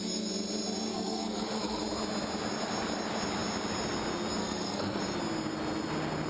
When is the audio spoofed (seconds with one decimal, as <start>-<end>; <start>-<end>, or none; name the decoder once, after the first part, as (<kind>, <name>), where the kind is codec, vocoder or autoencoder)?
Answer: 0.9-1.8 (codec, SNAC); 4.4-5.0